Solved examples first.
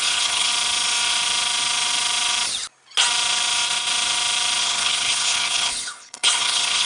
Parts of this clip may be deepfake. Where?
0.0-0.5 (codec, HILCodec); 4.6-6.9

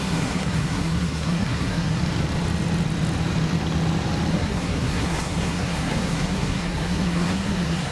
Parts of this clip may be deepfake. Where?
0.0-2.0 (codec, SNAC); 4.3-7.9